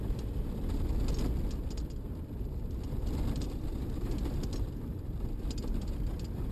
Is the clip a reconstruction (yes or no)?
yes